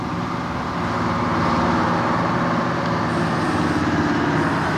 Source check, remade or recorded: recorded